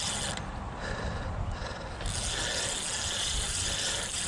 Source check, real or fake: fake